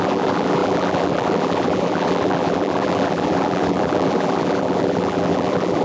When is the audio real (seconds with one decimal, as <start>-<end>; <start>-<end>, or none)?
none